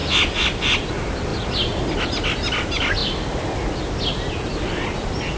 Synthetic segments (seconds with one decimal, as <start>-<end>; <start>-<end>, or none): none